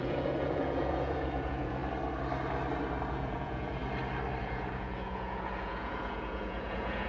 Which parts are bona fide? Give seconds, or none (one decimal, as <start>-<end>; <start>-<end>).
1.8-3.1; 3.8-4.4